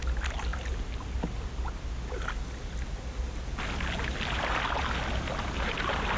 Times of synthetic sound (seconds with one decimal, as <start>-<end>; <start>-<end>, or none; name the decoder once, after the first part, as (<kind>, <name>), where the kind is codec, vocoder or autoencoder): none